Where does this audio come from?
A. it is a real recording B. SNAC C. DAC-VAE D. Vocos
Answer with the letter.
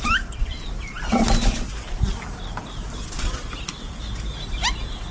A